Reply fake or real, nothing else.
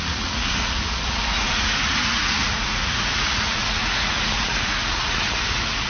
fake